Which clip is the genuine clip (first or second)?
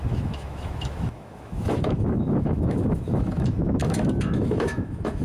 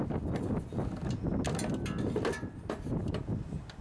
second